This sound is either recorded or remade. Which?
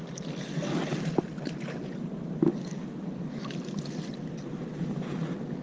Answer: recorded